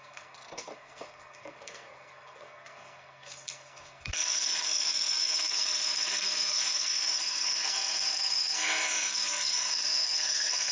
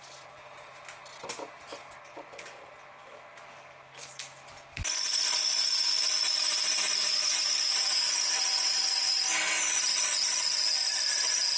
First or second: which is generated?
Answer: first